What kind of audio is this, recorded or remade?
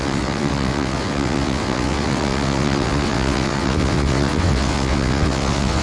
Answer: remade